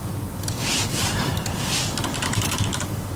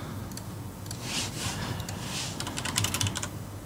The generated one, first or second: first